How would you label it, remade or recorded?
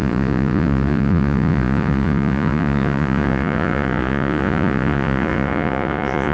remade